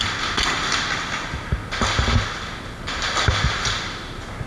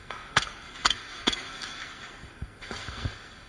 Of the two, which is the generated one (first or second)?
second